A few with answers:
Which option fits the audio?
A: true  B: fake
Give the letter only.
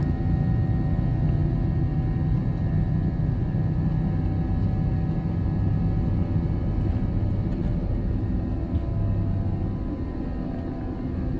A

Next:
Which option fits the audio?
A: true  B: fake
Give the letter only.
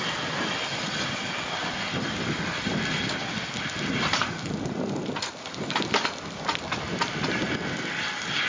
A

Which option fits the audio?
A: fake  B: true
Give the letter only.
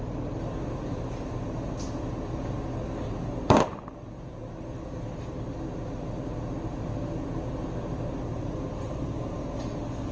B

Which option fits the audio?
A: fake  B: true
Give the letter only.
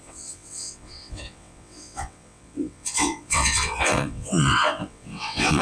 A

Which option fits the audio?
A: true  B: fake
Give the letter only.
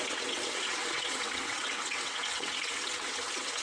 B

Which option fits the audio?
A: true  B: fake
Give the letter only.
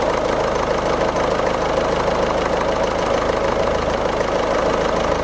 A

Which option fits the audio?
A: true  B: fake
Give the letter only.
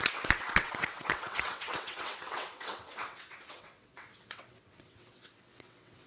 B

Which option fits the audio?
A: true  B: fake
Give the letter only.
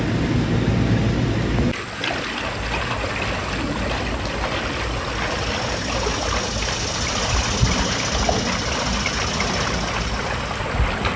A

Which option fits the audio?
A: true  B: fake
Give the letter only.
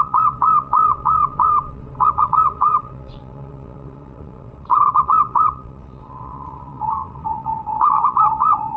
B